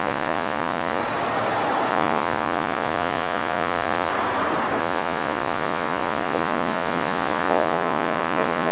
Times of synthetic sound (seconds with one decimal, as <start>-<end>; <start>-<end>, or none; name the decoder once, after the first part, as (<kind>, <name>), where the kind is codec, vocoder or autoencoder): 0.0-1.0 (vocoder, Vocos); 1.9-4.1; 4.8-8.7